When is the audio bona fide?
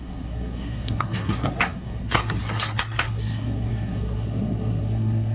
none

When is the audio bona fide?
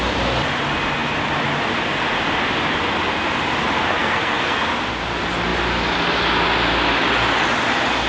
0.0-4.0; 4.6-8.1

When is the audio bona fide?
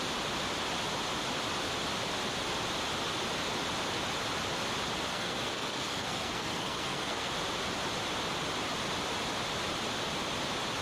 0.0-5.1; 7.3-10.8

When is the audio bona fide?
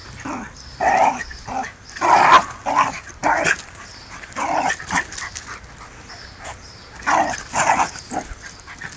0.0-9.0